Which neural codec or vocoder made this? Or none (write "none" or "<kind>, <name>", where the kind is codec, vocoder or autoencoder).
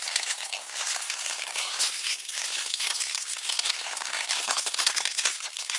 codec, SNAC